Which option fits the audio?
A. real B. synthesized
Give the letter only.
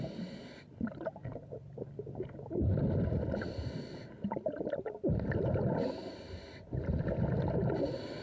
A